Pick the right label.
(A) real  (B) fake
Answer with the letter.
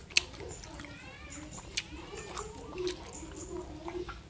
A